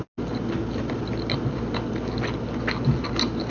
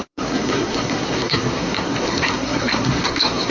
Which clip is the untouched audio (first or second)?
first